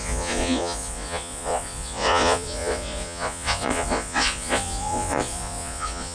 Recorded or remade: remade